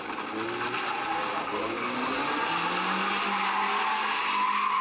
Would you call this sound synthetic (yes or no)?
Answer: no